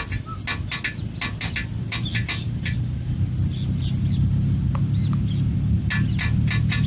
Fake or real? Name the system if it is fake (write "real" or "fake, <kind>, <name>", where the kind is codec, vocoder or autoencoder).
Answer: real